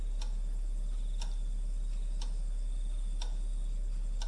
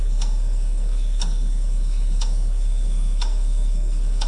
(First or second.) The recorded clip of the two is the first